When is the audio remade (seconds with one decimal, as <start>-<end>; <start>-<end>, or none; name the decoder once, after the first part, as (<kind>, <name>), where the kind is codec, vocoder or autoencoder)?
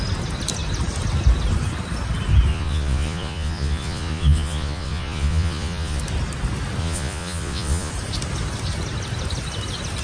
2.5-6.0 (vocoder, Vocos); 6.8-7.9